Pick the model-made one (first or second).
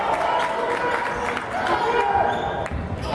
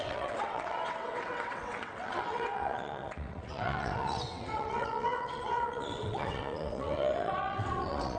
second